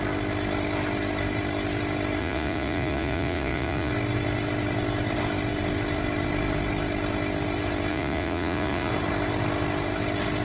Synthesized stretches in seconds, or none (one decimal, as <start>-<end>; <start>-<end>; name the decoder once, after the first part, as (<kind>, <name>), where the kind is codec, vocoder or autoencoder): 2.2-3.9 (vocoder, Vocos); 7.9-8.9